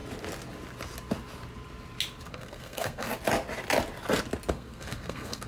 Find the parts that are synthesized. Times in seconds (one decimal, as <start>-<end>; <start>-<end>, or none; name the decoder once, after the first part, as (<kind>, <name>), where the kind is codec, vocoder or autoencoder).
2.3-3.1 (codec, SNAC); 4.5-5.5